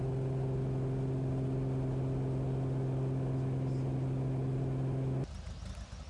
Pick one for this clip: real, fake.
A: real